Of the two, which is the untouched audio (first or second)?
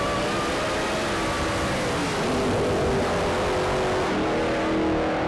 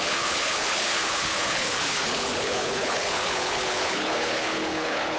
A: first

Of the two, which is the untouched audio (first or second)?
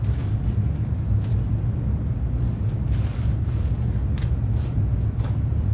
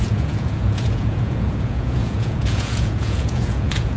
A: first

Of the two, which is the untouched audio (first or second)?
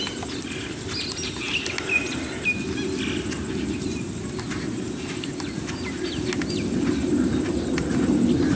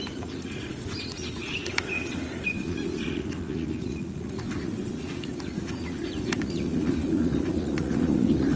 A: first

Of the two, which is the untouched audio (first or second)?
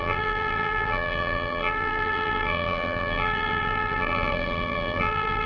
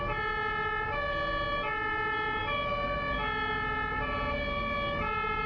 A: second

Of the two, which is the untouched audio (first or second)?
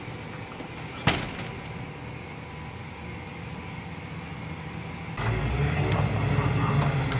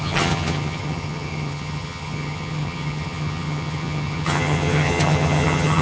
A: first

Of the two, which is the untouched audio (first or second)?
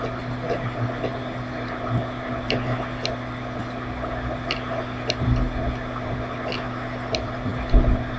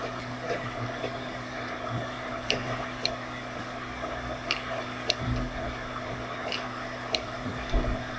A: first